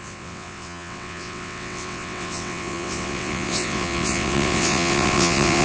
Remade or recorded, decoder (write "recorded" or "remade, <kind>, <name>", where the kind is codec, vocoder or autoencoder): remade, vocoder, WaveNeXt